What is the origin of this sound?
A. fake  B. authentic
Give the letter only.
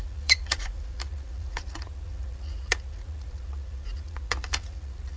A